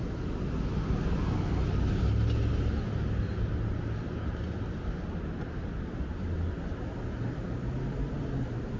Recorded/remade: recorded